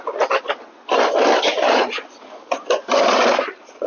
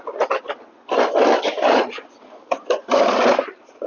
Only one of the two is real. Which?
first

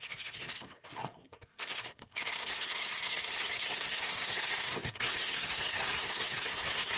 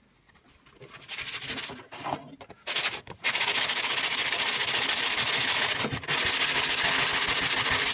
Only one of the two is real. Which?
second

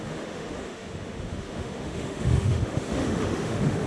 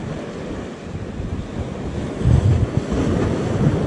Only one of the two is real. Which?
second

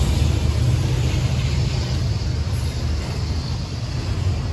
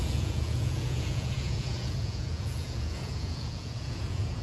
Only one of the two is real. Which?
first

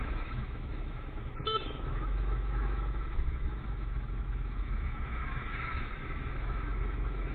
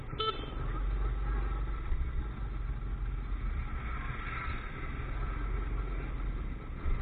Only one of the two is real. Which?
second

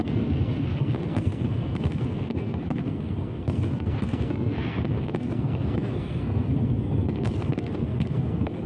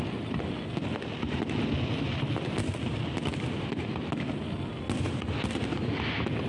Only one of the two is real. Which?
second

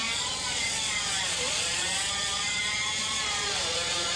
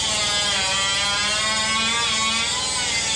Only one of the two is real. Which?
second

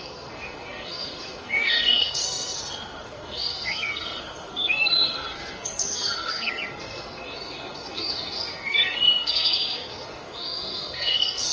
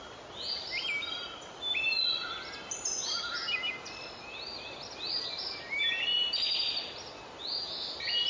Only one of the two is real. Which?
second